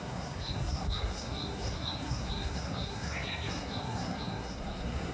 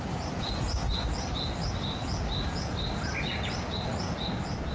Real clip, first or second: second